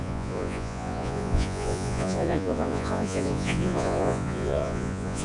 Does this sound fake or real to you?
fake